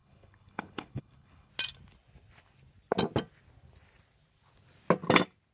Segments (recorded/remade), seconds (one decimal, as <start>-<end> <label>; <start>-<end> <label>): 0.0-1.5 remade; 1.5-5.5 recorded